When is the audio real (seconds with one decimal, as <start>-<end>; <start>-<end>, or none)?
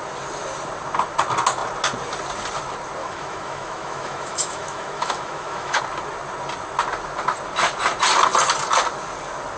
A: 0.0-3.0; 5.8-9.6